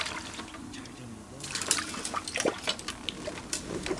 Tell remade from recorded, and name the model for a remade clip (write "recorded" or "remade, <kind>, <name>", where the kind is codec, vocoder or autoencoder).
recorded